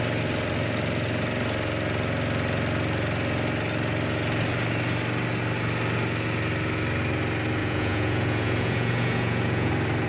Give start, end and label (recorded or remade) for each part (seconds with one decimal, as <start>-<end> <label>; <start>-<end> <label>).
0.0-7.6 recorded; 7.6-9.7 remade; 9.7-10.1 recorded